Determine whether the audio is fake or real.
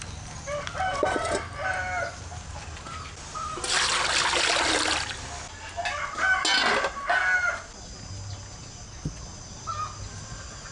real